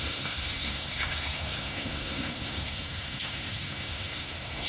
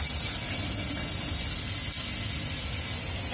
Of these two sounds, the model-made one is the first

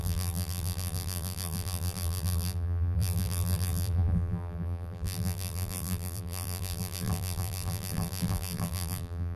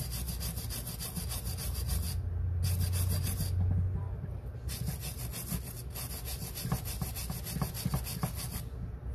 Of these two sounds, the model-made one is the first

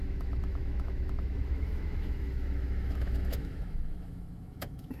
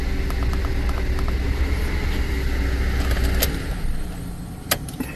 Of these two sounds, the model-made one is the first